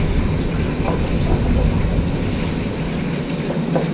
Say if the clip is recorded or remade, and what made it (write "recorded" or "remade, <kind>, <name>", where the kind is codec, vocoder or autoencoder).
recorded